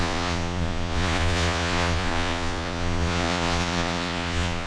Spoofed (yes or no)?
yes